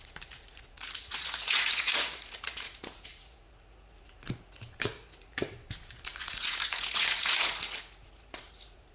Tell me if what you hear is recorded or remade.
remade